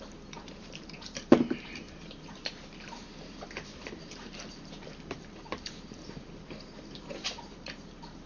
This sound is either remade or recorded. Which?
remade